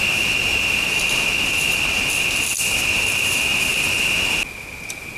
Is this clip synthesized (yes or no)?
no